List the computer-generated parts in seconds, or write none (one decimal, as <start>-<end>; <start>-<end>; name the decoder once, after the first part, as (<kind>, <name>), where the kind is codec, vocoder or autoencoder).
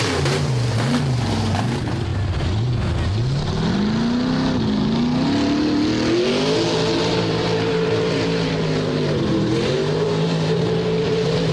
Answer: 0.0-2.1 (vocoder, BigVGAN v2); 7.0-11.5